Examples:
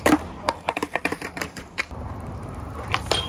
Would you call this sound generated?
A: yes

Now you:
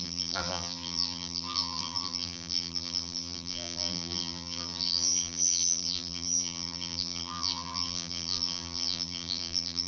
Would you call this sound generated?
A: yes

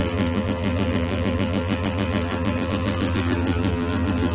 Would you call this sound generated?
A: yes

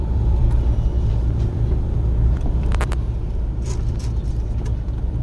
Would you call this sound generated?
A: yes